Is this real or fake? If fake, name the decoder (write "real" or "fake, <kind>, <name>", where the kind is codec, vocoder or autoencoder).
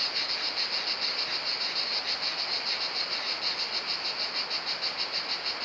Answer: real